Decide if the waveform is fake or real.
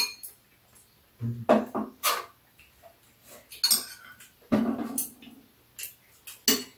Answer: real